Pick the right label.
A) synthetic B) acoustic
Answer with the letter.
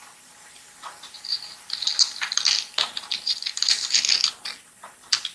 B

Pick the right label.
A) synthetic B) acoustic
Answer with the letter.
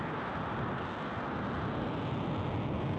B